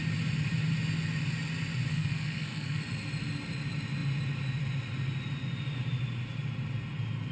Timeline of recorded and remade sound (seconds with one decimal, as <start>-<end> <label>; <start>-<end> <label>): 0.0-1.9 recorded; 1.9-2.8 remade; 2.8-7.3 recorded